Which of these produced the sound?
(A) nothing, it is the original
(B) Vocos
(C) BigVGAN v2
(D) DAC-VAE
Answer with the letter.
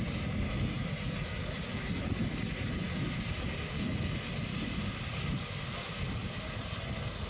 A